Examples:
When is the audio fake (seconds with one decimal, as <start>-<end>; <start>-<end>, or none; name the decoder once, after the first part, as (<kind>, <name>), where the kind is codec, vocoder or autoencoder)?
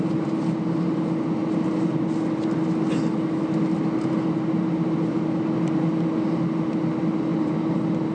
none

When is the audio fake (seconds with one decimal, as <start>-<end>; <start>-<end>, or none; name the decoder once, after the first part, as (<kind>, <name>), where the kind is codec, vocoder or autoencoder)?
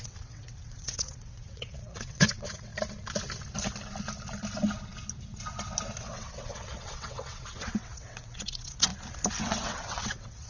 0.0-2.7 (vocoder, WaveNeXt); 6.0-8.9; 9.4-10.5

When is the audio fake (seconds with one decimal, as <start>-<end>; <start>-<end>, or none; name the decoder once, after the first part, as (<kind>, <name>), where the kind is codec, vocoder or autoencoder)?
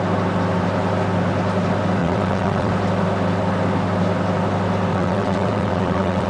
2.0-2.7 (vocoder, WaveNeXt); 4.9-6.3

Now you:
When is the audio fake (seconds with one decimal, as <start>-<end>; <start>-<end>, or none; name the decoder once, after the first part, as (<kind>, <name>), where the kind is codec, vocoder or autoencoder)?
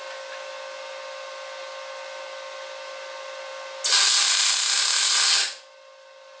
none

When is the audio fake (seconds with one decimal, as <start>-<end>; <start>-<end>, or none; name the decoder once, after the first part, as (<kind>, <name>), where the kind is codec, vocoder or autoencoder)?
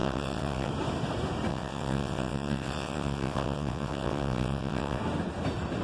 0.0-0.7 (vocoder, WaveNeXt); 1.5-5.0